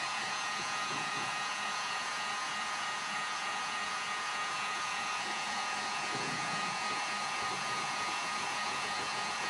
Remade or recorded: remade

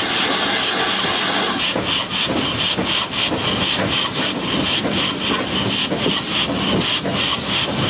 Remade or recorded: recorded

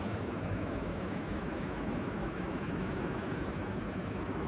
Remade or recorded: remade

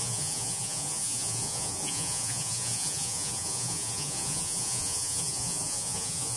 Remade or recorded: remade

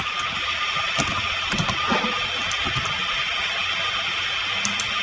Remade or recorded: recorded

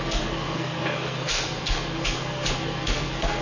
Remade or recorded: remade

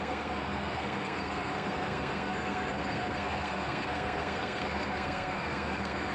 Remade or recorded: remade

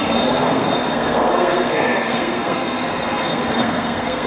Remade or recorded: remade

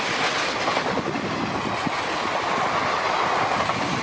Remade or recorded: recorded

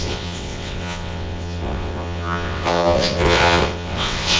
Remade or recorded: remade